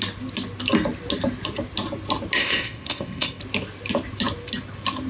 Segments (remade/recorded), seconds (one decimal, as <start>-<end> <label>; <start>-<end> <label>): 0.0-2.4 recorded; 2.4-3.4 remade; 3.4-5.1 recorded